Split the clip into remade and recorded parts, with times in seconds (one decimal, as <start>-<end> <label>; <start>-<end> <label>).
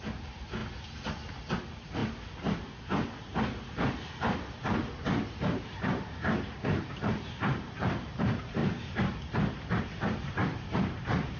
0.0-0.6 remade; 0.6-1.5 recorded; 1.5-2.0 remade; 2.0-5.3 recorded; 5.3-8.6 remade; 8.6-9.8 recorded; 9.8-11.4 remade